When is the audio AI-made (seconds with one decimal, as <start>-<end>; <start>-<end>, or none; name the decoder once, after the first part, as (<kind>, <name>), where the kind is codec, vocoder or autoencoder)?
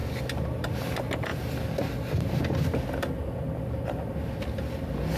none